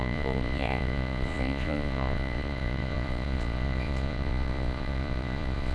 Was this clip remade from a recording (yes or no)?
yes